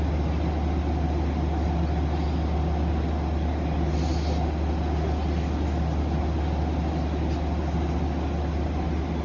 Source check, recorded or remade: recorded